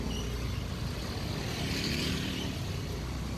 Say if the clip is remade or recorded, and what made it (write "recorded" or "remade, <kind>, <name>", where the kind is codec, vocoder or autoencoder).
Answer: recorded